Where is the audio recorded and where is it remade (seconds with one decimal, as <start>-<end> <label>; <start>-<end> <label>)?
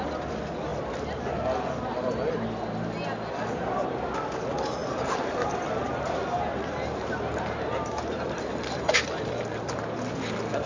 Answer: 0.0-4.8 recorded; 4.8-9.4 remade; 9.4-10.7 recorded